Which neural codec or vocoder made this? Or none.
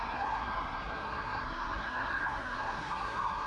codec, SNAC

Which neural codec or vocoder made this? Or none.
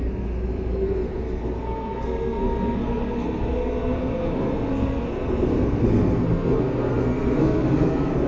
codec, SNAC